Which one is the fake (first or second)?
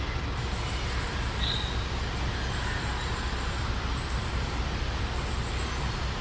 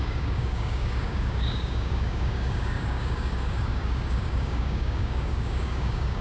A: second